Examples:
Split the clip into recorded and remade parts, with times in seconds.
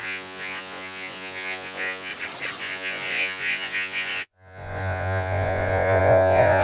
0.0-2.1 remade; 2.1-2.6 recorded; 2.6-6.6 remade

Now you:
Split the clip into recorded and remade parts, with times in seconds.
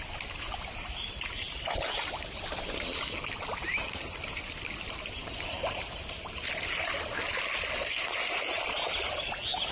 0.0-5.2 recorded; 5.2-5.9 remade; 5.9-9.7 recorded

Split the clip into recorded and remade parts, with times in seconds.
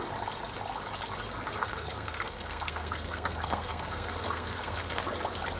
0.0-1.6 recorded; 1.6-5.0 remade; 5.0-5.6 recorded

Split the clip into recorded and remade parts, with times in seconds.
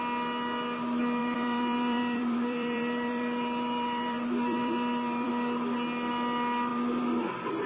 0.0-1.2 recorded; 1.2-5.3 remade; 5.3-6.7 recorded; 6.7-7.7 remade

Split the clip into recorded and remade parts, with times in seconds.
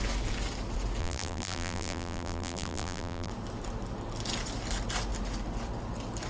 0.0-1.0 recorded; 1.0-3.3 remade; 3.3-6.3 recorded